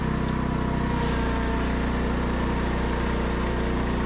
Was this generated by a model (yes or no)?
no